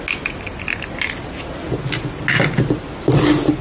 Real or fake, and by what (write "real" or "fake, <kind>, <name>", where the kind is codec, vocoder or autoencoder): real